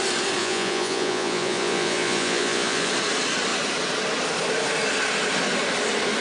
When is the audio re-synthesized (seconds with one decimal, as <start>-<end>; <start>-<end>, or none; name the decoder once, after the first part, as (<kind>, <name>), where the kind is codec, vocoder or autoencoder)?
0.4-2.9 (vocoder, Vocos)